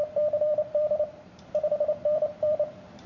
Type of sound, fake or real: fake